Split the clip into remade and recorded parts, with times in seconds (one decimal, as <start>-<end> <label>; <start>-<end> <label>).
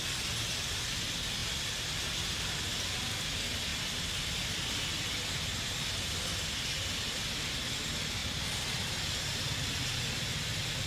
0.0-10.9 recorded